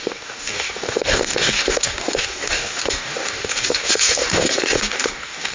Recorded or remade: remade